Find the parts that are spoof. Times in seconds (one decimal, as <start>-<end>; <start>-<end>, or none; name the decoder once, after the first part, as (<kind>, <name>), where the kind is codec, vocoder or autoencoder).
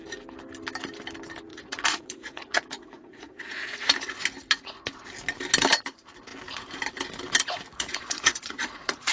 1.5-4.1 (vocoder, Vocos); 7.7-9.1